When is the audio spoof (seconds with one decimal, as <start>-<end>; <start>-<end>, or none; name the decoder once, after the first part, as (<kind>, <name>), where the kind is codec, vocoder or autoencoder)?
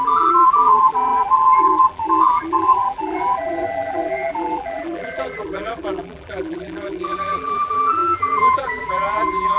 0.0-9.6 (vocoder, BigVGAN v2)